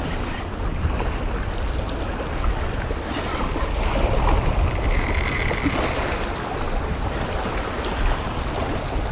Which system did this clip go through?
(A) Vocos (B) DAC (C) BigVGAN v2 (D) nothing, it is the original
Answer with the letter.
D